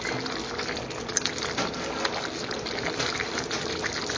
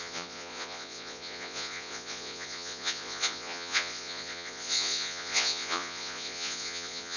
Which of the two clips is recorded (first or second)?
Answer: first